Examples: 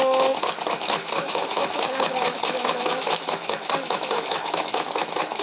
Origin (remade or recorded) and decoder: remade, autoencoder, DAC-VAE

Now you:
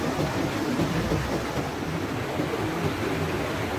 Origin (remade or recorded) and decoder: recorded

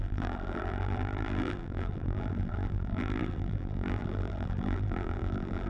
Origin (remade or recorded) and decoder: remade, vocoder, BigVGAN v2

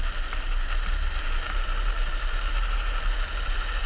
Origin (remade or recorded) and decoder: recorded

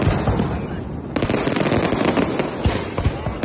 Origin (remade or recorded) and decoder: recorded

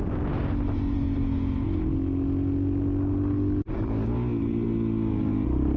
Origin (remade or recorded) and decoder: recorded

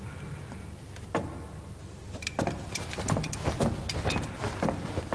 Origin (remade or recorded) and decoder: recorded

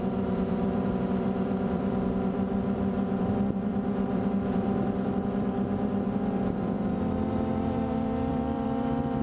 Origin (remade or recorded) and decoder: remade, vocoder, BigVGAN v2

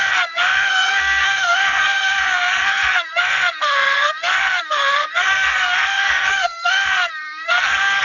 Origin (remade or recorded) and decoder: remade, codec, SNAC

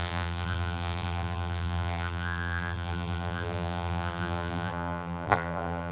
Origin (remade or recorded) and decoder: remade, vocoder, BigVGAN v2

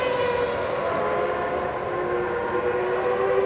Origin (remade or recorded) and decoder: recorded